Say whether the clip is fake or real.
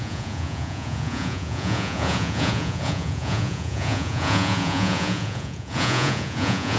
fake